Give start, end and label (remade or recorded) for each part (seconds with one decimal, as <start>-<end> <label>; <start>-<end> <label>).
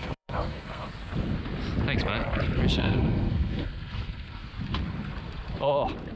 0.0-0.9 remade; 0.9-2.7 recorded; 2.7-4.4 remade; 4.4-6.2 recorded